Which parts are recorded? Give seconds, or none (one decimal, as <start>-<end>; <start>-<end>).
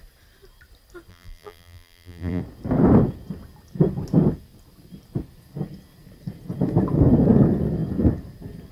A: 0.0-1.1; 2.4-8.7